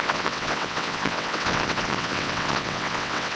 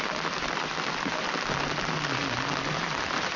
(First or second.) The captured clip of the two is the second